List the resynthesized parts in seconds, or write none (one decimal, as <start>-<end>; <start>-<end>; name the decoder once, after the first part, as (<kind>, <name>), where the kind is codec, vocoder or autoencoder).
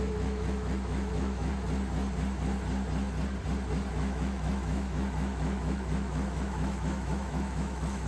0.0-1.5 (autoencoder, DAC-VAE); 3.9-8.1